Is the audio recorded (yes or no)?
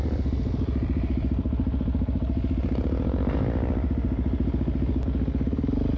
yes